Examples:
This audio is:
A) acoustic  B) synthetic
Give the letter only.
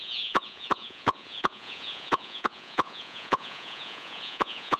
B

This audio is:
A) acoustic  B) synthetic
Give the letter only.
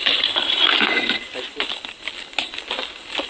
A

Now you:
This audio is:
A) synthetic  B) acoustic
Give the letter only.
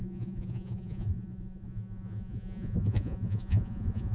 A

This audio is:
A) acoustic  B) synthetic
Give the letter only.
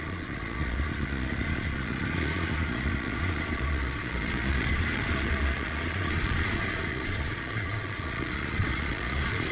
B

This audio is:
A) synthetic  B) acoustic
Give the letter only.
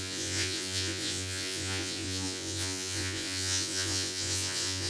A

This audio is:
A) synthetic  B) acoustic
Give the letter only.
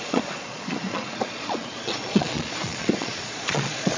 A